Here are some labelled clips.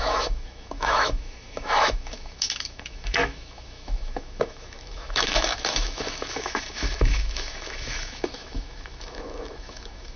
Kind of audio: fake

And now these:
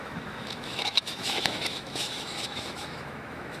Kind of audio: fake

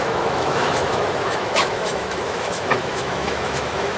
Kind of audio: fake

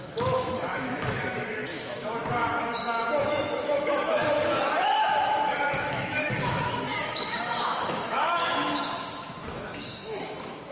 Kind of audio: fake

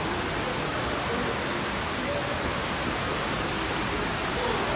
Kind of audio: real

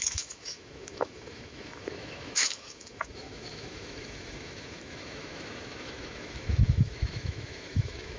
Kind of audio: fake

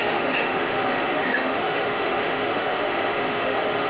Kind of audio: fake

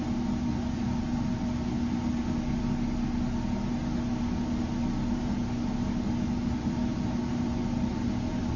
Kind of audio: real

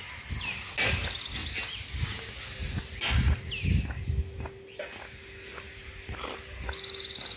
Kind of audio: real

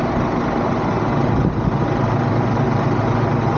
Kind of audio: real